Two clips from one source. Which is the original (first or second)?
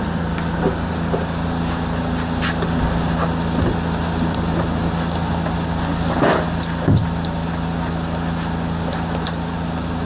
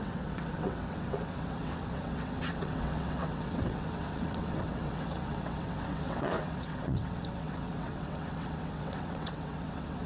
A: first